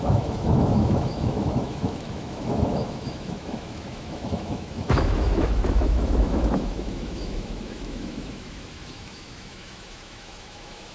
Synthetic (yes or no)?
yes